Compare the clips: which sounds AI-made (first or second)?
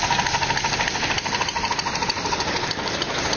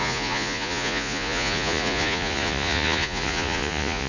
second